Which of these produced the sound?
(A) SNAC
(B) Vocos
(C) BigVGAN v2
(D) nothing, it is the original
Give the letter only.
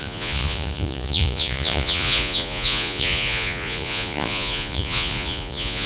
B